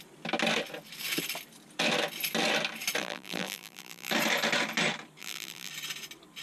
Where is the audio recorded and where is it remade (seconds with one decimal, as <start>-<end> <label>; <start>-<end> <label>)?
0.0-3.0 recorded; 3.0-4.1 remade; 4.1-5.2 recorded; 5.2-5.7 remade; 5.7-6.4 recorded